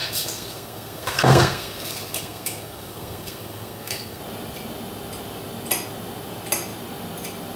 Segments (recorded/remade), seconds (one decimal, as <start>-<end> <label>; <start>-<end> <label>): 0.0-4.2 remade; 4.2-7.6 recorded